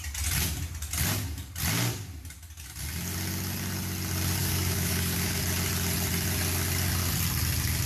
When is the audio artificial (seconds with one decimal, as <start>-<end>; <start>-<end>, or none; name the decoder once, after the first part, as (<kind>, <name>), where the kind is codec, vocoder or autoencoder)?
4.4-5.4 (codec, DAC)